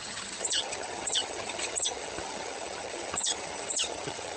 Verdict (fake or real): fake